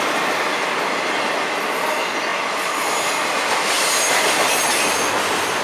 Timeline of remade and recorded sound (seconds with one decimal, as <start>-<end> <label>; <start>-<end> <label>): 0.0-5.6 recorded